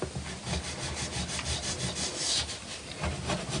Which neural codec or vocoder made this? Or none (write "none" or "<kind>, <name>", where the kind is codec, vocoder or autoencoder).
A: none